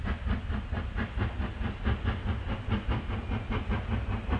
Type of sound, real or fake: real